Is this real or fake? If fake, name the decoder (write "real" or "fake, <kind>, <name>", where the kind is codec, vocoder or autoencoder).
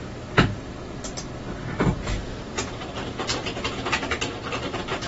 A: real